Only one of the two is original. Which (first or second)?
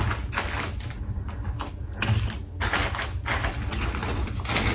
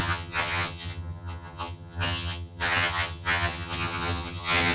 first